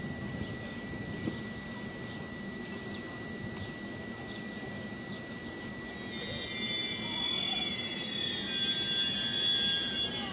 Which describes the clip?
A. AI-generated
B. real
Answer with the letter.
B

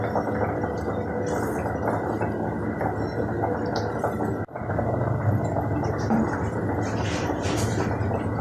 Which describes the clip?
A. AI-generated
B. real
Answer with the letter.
B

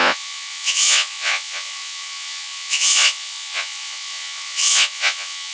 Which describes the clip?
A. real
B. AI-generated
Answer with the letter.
B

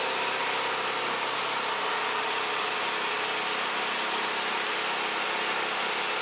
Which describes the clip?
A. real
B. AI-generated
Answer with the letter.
A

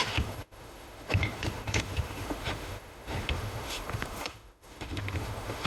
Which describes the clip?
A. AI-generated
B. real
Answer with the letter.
A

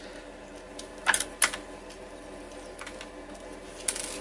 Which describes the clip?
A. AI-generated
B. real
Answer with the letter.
B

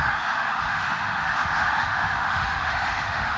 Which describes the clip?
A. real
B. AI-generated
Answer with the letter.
B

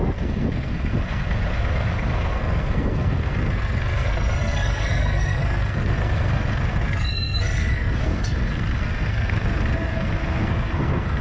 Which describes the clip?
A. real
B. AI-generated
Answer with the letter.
B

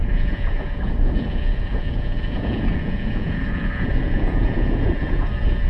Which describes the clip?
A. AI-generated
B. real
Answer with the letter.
A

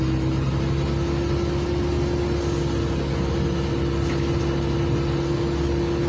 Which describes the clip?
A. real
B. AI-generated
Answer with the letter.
A